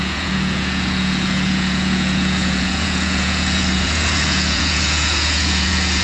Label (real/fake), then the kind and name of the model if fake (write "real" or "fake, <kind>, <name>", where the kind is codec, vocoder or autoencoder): fake, vocoder, Vocos